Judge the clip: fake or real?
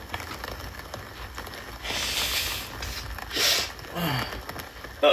real